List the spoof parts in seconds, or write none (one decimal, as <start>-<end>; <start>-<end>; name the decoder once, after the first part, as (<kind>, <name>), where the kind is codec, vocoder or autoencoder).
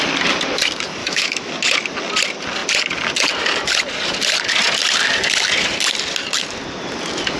1.0-1.5 (autoencoder, DAC-VAE)